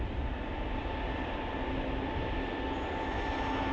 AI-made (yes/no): no